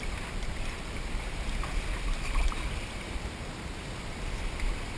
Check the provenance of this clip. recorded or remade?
remade